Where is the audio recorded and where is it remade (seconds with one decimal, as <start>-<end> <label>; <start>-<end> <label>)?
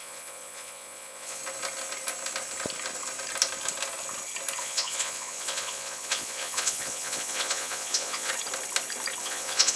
0.0-1.4 remade; 1.4-4.6 recorded; 4.6-8.3 remade; 8.3-9.2 recorded; 9.2-9.8 remade